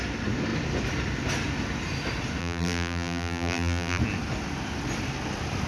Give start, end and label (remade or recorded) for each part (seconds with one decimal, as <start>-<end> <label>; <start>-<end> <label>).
0.0-2.4 recorded; 2.4-4.0 remade; 4.0-5.7 recorded